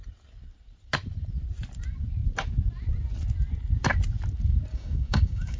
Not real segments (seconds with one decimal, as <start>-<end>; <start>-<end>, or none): 4.7-5.6